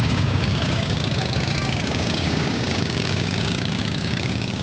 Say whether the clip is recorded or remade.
remade